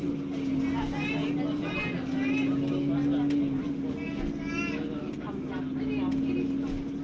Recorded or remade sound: recorded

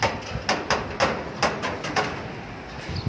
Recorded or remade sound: recorded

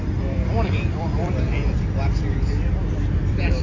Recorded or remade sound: remade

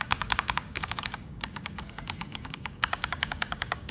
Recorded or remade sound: remade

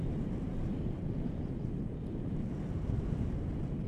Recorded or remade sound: recorded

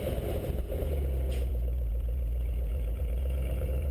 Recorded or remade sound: remade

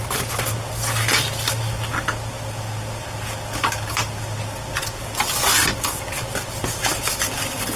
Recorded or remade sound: recorded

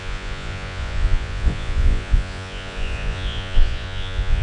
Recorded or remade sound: remade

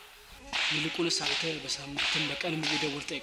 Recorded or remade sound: recorded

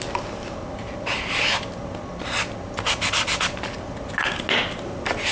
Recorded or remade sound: recorded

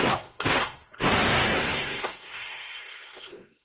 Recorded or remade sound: remade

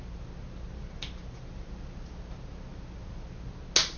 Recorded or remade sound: recorded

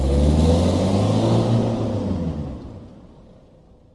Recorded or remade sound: recorded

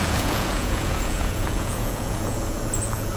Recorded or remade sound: remade